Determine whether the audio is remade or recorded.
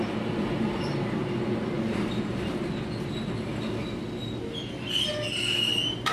recorded